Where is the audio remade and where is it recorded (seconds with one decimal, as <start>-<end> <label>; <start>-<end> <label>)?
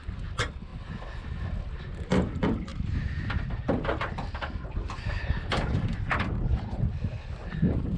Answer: 0.0-8.0 recorded